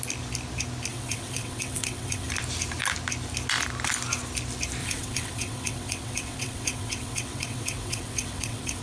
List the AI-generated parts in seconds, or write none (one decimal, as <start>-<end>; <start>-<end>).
0.9-2.3; 4.8-8.8